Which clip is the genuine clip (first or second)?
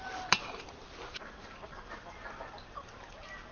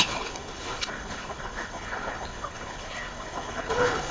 first